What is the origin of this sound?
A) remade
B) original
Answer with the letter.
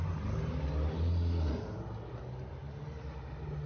B